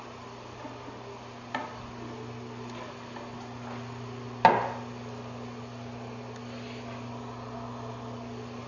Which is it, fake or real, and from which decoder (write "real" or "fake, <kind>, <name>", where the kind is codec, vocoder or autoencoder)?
real